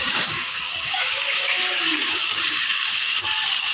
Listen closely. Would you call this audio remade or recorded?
remade